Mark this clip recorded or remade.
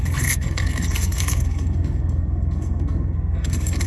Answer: remade